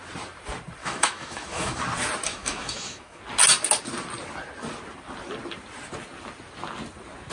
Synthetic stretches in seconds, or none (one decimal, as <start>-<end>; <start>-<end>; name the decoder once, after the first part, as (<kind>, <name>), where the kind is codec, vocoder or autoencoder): 0.8-1.8 (autoencoder, DAC-VAE); 2.3-3.2